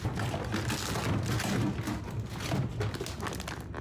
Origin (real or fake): real